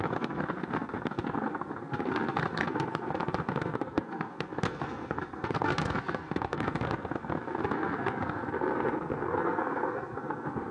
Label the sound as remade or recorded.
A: remade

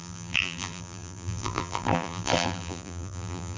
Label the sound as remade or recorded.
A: remade